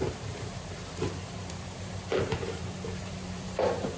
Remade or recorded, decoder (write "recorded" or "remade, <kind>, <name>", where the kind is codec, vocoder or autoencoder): remade, vocoder, BigVGAN v2